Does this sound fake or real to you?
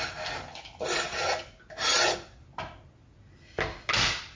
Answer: real